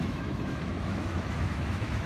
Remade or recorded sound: remade